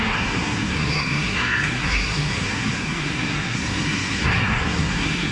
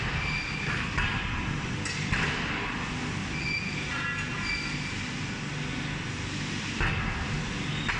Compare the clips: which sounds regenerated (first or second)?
first